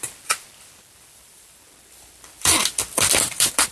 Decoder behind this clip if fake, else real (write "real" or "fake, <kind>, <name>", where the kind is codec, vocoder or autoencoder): fake, vocoder, BigVGAN v2